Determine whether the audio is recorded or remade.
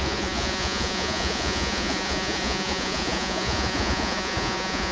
remade